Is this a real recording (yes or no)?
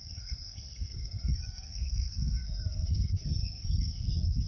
no